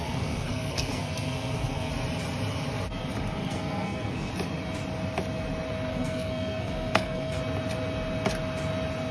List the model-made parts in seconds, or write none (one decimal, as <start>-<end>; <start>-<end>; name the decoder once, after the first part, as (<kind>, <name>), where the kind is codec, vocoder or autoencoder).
0.0-1.9 (codec, SNAC); 3.4-4.3; 5.9-7.4